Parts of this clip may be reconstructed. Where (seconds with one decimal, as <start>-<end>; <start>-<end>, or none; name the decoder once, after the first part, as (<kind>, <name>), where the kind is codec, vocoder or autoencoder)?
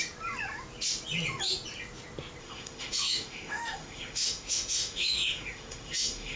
2.4-6.4 (autoencoder, DAC-VAE)